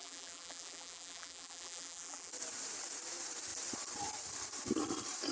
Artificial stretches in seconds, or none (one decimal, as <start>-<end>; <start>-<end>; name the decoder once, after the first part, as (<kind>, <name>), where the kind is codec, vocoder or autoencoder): 0.0-2.3 (vocoder, BigVGAN v2)